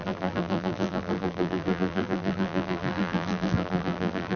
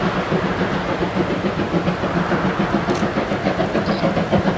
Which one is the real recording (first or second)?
second